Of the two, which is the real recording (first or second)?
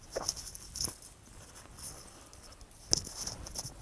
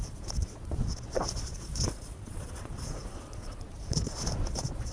first